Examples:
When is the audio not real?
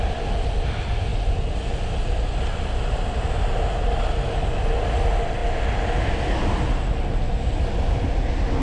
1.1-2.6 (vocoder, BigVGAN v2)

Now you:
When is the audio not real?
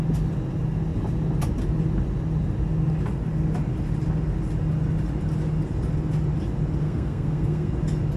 6.8-7.7 (codec, SNAC)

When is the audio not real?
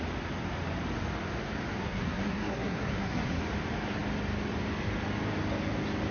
1.8-3.4 (codec, SNAC)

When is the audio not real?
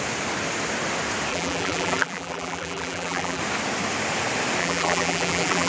1.3-3.4 (vocoder, BigVGAN v2); 4.6-5.7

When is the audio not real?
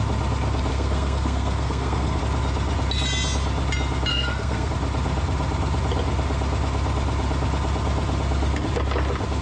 0.7-2.2 (codec, SNAC); 4.1-4.7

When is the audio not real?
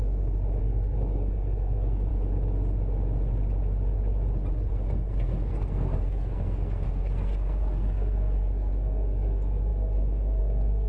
0.6-2.1 (codec, SNAC); 4.7-10.9